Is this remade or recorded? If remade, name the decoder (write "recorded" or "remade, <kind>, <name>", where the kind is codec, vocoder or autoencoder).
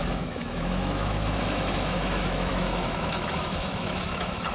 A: remade, autoencoder, DAC-VAE